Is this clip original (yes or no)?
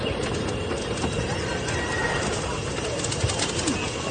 yes